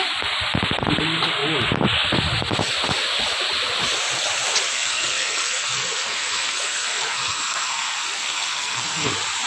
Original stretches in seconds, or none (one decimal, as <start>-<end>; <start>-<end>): 0.0-4.7; 9.1-9.5